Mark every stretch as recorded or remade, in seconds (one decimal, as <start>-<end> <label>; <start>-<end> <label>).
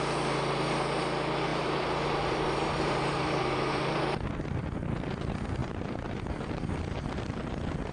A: 0.0-1.5 recorded; 1.5-4.0 remade; 4.0-5.6 recorded; 5.6-6.8 remade; 6.8-7.9 recorded